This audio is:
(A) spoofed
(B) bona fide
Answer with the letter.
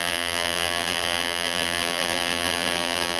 A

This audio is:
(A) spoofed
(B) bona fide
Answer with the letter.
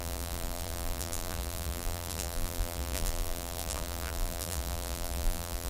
A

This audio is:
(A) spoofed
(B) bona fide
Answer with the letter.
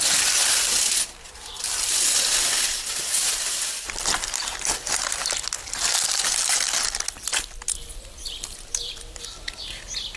B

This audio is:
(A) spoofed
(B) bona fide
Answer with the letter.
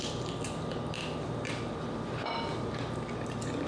B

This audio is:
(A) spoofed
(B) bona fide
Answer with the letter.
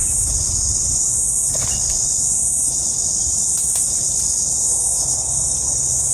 B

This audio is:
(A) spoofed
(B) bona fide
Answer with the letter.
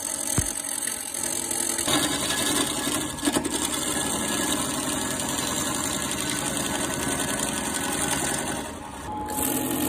B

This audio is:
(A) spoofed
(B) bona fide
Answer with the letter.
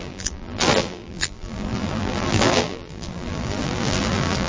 A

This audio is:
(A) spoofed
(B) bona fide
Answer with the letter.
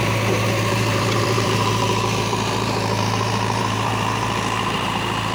A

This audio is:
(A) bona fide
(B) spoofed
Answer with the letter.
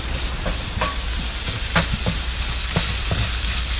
A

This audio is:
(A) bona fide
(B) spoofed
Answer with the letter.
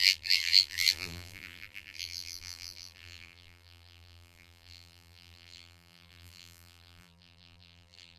B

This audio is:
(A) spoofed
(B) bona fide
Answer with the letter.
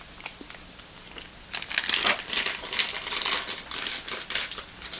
B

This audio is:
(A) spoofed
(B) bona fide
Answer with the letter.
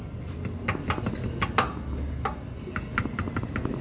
B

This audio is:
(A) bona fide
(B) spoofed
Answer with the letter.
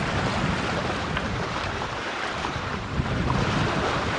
B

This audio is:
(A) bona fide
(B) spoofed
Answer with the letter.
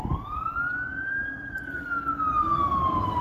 A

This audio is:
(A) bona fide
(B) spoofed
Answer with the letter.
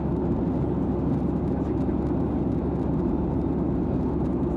A